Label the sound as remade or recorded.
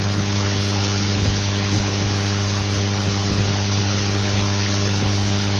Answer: remade